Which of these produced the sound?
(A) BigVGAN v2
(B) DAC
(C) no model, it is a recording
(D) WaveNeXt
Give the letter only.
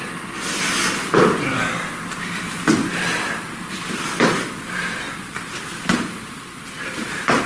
A